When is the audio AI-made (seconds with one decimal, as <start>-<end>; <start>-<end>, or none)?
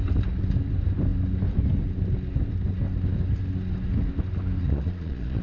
4.6-5.4